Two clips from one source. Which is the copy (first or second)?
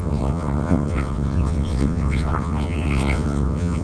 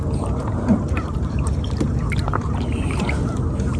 first